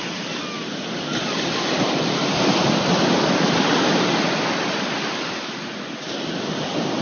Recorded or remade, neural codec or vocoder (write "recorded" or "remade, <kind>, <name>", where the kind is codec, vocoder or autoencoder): recorded